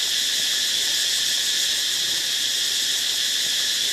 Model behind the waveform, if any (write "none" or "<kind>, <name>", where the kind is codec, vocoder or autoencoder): none